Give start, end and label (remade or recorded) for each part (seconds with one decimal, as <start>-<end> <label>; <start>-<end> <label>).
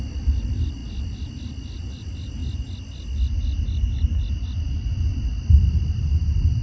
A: 0.0-6.6 recorded